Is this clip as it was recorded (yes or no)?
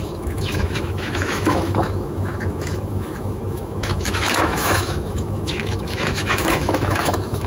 no